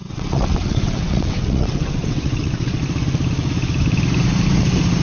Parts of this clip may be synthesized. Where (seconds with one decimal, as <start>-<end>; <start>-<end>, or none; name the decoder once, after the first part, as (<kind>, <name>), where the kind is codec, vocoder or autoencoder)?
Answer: 0.0-2.8 (vocoder, WaveNeXt)